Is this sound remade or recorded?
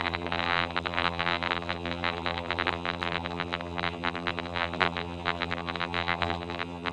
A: remade